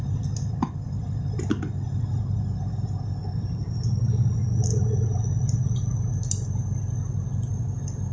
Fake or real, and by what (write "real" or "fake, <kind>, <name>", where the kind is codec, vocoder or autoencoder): real